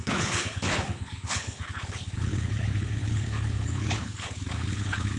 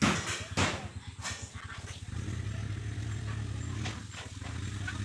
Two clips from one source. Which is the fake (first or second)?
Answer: first